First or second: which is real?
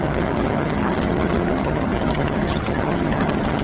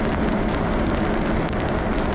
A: second